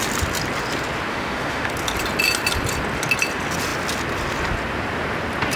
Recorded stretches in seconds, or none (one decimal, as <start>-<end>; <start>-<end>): 0.0-1.1; 1.7-5.6